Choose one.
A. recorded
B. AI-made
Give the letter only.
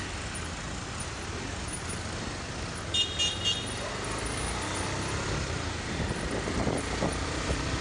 A